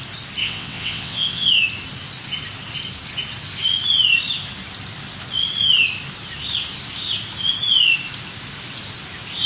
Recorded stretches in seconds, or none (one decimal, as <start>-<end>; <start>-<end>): 0.0-0.4; 1.5-9.5